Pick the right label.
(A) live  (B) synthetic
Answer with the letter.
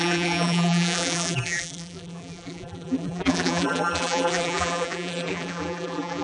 B